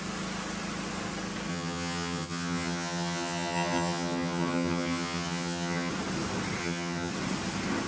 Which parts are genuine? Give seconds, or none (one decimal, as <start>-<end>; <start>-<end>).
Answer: 0.0-1.5; 5.9-6.6; 7.1-7.9